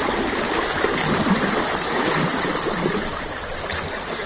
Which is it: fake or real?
real